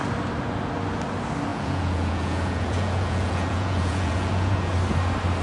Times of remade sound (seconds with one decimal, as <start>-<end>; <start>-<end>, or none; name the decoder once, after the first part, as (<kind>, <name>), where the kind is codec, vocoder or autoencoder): 1.5-4.7 (vocoder, Vocos)